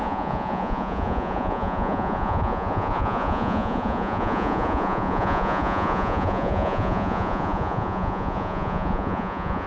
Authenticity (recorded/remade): remade